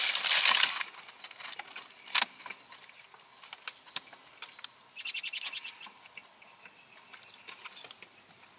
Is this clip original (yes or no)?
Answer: yes